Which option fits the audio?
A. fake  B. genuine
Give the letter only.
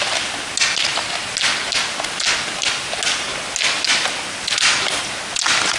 B